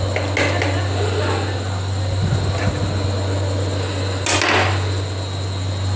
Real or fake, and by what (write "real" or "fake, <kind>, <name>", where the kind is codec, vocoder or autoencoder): real